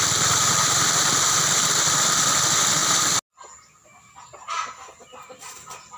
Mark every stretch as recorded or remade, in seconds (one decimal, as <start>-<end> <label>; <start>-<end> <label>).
0.0-6.0 recorded